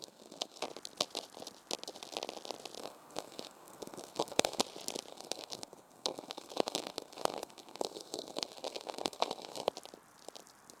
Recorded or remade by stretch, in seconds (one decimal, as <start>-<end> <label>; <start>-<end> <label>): 0.0-0.6 remade; 0.6-2.8 recorded; 2.8-4.6 remade; 4.6-5.1 recorded; 5.1-9.7 remade; 9.7-10.8 recorded